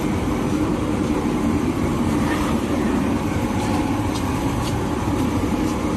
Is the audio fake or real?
fake